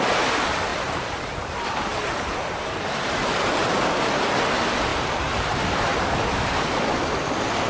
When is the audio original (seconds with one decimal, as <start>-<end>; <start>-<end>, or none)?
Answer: 0.0-0.7; 3.3-4.9; 5.5-7.7